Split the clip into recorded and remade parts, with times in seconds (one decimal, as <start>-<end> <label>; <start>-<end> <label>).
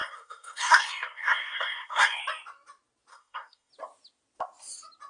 0.0-2.2 remade; 2.2-3.1 recorded; 3.1-3.7 remade; 3.7-5.1 recorded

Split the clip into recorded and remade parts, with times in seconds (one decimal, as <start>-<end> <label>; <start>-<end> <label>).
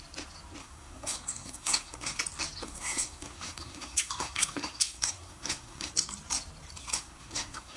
0.0-0.6 recorded; 0.6-2.2 remade; 2.2-2.6 recorded; 2.6-5.9 remade; 5.9-6.8 recorded; 6.8-7.8 remade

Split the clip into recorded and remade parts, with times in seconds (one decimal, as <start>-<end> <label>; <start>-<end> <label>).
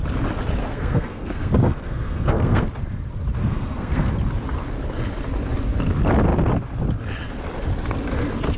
0.0-0.6 recorded; 0.6-2.7 remade; 2.7-3.4 recorded; 3.4-4.1 remade; 4.1-8.6 recorded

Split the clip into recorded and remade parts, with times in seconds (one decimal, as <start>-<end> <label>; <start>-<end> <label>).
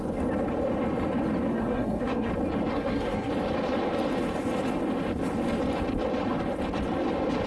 0.0-1.5 recorded; 1.5-2.3 remade; 2.3-2.7 recorded; 2.7-3.3 remade; 3.3-7.5 recorded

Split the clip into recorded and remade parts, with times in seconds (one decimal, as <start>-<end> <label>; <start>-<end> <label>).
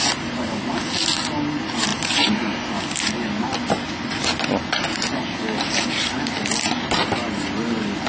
0.0-8.1 recorded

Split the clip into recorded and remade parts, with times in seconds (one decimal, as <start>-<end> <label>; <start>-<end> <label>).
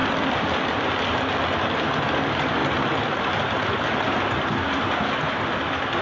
0.0-6.0 recorded